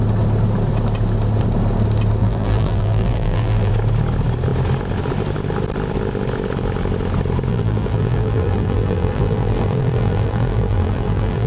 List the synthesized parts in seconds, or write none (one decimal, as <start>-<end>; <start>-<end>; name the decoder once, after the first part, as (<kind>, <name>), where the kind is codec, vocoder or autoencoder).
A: 2.2-3.7 (vocoder, BigVGAN v2); 7.5-11.5